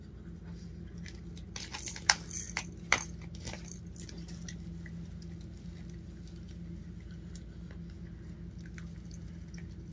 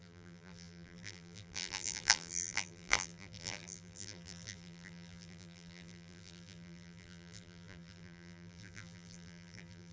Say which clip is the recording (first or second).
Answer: first